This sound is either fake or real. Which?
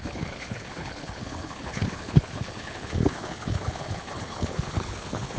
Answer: fake